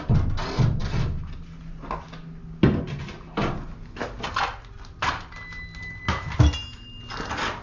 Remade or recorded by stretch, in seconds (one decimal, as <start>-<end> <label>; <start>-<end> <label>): 0.0-7.6 recorded